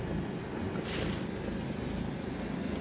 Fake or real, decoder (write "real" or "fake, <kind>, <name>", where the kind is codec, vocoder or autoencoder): real